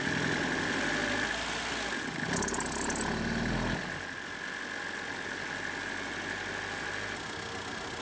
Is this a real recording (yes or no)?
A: yes